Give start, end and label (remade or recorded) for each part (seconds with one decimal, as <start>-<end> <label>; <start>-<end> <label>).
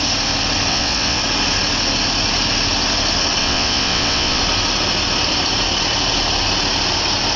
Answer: 0.0-0.7 recorded; 0.7-1.2 remade; 1.2-3.4 recorded; 3.4-4.4 remade; 4.4-7.4 recorded